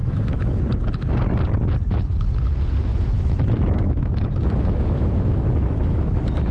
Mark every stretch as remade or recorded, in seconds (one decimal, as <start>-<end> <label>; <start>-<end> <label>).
0.0-0.6 remade; 0.6-2.9 recorded; 2.9-6.5 remade